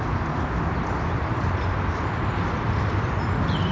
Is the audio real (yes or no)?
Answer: yes